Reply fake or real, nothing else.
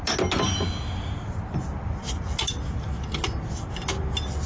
real